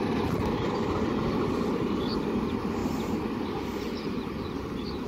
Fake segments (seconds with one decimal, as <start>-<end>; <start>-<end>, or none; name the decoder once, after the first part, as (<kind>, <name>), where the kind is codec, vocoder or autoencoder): none